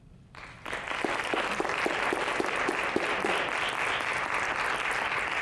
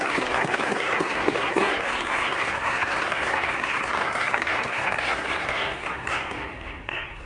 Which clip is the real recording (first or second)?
first